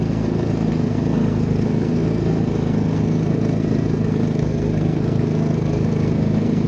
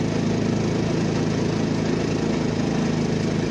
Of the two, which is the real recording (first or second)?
second